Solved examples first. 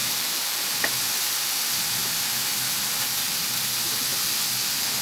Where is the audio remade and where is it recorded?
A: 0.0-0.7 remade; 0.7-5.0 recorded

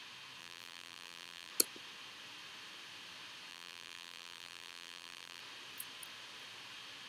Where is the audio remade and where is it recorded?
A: 0.0-0.4 recorded; 0.4-1.5 remade; 1.5-3.5 recorded; 3.5-5.4 remade; 5.4-7.1 recorded

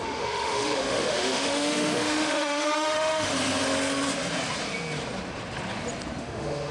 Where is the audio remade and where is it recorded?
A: 0.0-3.3 remade; 3.3-6.2 recorded; 6.2-6.7 remade

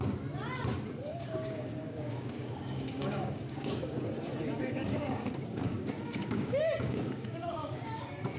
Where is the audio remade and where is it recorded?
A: 0.0-1.1 recorded; 1.1-4.1 remade; 4.1-4.6 recorded; 4.6-8.0 remade; 8.0-8.4 recorded

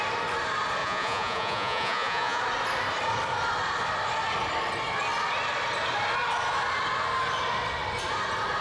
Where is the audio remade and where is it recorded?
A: 0.0-0.8 recorded; 0.8-2.4 remade; 2.4-8.6 recorded

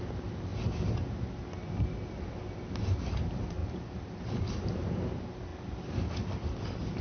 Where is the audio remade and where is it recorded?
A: 0.0-3.6 recorded; 3.6-4.2 remade; 4.2-5.5 recorded; 5.5-6.1 remade; 6.1-7.0 recorded

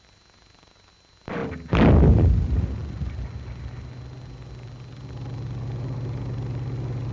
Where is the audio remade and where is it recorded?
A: 0.0-7.1 recorded